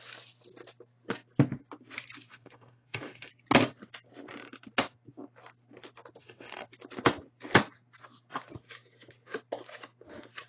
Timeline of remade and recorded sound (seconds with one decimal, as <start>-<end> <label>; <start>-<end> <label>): 0.0-2.3 recorded; 2.3-3.3 remade; 3.3-6.2 recorded; 6.2-6.7 remade; 6.7-10.5 recorded